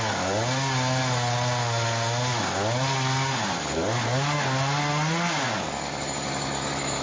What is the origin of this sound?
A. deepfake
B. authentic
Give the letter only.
B